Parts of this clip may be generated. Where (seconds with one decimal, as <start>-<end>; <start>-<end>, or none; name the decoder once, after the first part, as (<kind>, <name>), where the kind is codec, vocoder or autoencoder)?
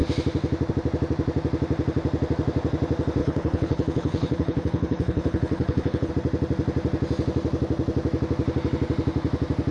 3.2-6.1 (codec, HILCodec)